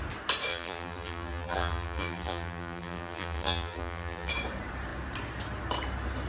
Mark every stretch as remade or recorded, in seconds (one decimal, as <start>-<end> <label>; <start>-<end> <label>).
0.0-0.5 recorded; 0.5-4.3 remade; 4.3-6.3 recorded